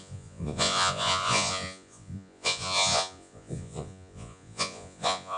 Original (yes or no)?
no